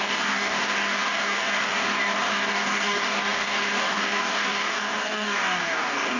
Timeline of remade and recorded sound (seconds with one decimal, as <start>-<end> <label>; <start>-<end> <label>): 0.0-6.2 remade